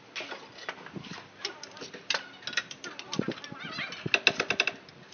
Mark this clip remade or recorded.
recorded